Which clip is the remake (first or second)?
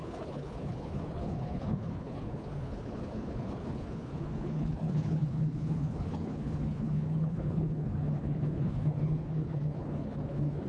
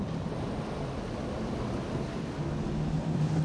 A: first